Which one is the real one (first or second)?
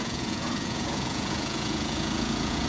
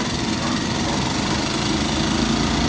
second